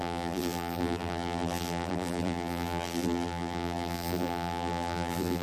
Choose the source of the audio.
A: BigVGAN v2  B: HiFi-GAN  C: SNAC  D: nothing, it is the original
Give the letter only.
A